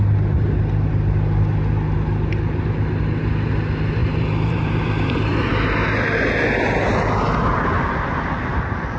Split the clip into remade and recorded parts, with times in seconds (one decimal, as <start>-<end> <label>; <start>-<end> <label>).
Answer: 0.0-4.0 recorded; 4.0-5.5 remade; 5.5-9.0 recorded